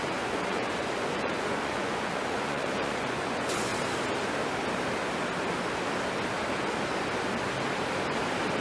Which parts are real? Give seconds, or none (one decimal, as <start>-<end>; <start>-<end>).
3.7-8.6

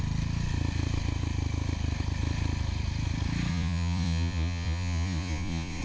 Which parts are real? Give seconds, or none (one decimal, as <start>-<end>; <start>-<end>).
0.0-3.5

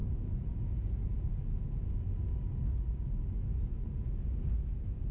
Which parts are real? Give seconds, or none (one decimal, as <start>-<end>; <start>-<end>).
2.0-3.5

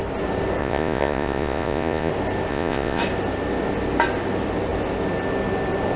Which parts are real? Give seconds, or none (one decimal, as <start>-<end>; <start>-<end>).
0.0-0.6; 2.1-2.5; 3.0-6.0

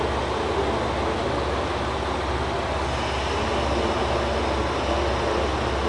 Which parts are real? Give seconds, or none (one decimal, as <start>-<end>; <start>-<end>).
0.0-5.9